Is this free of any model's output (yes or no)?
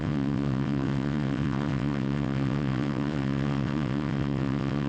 no